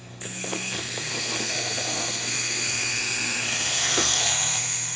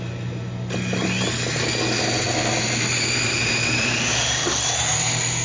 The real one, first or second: second